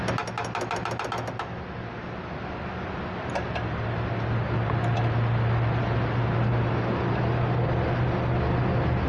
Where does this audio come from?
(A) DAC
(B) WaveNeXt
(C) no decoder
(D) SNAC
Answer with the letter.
C